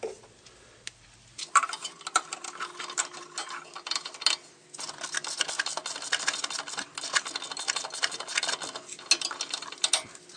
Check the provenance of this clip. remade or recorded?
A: recorded